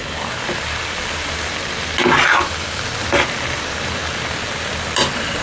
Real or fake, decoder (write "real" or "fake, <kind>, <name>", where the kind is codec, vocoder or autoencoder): fake, vocoder, BigVGAN v2